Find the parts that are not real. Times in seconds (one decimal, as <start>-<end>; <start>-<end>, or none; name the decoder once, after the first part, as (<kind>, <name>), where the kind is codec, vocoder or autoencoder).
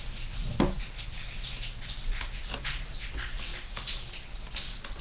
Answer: none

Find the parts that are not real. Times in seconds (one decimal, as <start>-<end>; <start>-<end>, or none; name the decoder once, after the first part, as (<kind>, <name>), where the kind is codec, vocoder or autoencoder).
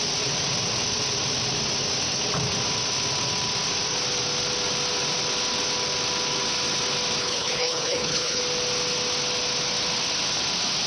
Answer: 7.2-8.4 (codec, HILCodec)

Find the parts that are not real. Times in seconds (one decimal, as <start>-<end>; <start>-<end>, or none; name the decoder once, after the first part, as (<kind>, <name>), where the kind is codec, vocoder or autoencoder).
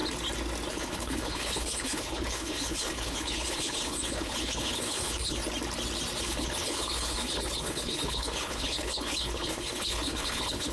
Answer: 0.7-5.4 (codec, HILCodec); 6.2-10.7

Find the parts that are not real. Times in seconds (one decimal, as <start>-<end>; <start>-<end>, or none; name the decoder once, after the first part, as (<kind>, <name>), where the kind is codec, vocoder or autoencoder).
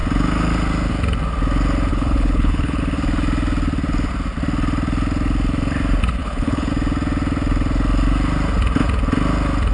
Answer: 1.9-2.8 (codec, HILCodec); 6.2-6.7